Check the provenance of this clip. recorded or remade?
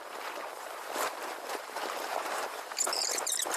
remade